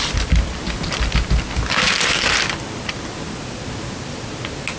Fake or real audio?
real